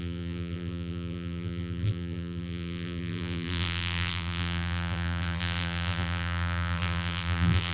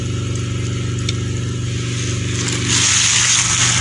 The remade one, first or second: first